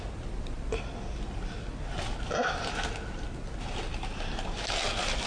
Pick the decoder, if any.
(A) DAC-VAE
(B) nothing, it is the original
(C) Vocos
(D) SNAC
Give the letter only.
B